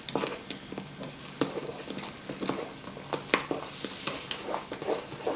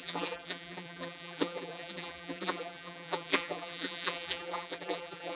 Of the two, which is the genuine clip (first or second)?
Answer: first